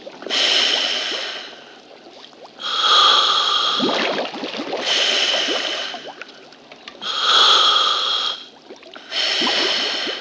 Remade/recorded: recorded